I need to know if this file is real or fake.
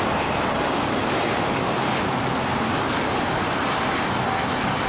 real